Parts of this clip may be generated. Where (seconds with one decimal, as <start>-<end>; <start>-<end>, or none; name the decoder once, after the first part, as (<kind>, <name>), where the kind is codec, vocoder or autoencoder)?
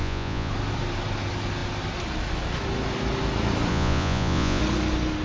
0.0-0.5 (vocoder, Vocos); 3.7-4.6